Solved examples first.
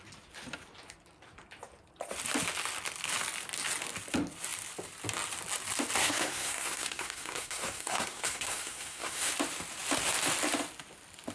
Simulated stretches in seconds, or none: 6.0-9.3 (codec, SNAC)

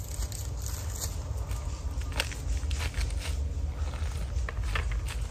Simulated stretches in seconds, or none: none

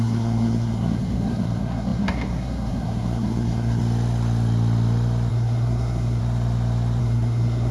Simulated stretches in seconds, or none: 0.0-3.8 (codec, SNAC); 5.3-6.2; 7.0-7.7